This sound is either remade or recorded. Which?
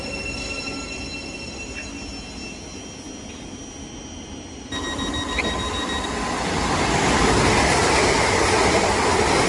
recorded